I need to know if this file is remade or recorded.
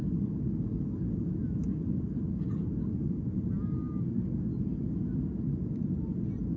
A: recorded